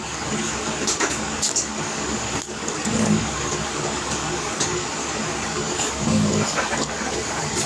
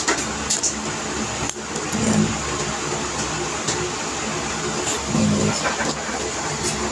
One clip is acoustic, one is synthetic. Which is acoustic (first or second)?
second